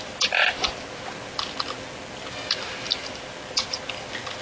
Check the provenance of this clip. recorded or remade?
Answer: recorded